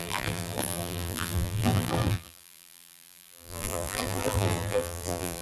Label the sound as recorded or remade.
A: remade